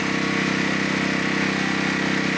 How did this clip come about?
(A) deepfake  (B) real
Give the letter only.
B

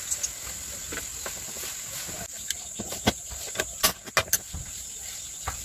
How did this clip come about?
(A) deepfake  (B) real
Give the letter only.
B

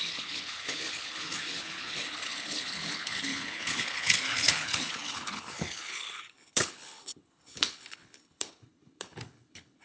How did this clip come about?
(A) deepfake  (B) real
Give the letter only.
A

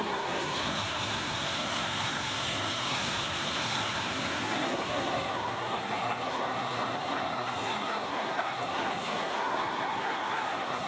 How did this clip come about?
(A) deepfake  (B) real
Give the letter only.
A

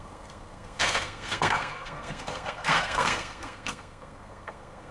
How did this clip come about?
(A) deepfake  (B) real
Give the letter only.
A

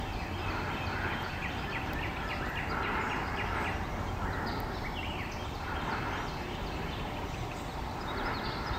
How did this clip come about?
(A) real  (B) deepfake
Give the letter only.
A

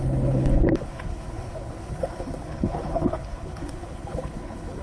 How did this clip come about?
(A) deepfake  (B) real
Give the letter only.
A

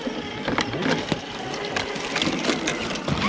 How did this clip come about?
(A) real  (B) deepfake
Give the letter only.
A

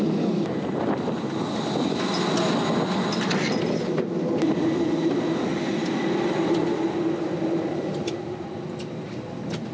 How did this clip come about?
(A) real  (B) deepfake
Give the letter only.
A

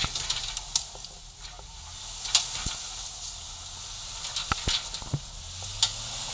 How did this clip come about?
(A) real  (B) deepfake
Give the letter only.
A